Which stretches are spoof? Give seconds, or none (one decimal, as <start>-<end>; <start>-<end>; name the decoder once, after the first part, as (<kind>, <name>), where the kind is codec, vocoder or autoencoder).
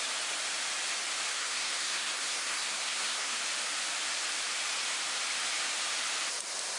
1.3-3.4 (codec, SNAC)